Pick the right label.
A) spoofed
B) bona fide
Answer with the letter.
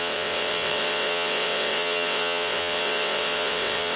A